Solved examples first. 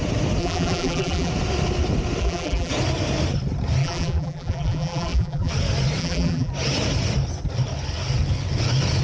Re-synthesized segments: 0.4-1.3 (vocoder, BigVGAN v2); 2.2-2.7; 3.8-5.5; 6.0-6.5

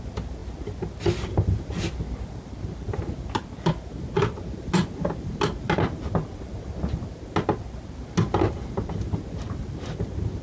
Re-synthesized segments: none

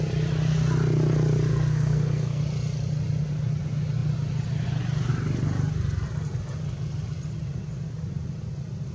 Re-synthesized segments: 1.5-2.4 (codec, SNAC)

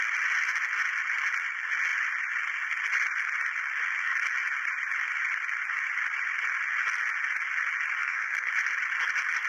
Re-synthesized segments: 8.0-8.5 (codec, SNAC)